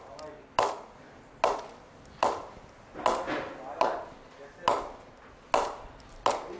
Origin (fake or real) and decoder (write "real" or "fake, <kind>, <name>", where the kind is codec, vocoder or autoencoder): real